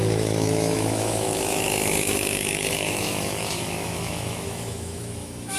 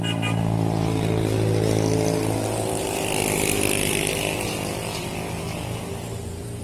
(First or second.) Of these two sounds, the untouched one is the second